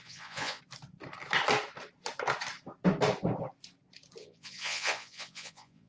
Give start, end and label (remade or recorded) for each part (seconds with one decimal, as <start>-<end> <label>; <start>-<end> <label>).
0.0-0.6 remade; 0.6-4.2 recorded; 4.2-5.9 remade